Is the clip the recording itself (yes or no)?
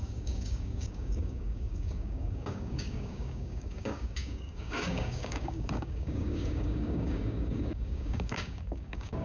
no